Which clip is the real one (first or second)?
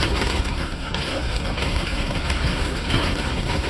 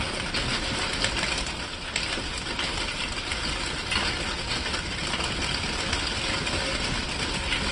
second